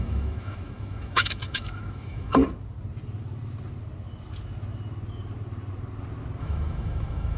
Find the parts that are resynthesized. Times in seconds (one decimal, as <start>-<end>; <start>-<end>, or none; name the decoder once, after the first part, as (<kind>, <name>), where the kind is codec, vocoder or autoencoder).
0.0-2.4 (autoencoder, DAC-VAE); 6.4-7.4